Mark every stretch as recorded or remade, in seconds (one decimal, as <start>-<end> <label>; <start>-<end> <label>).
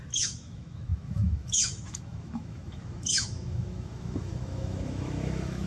0.0-5.7 remade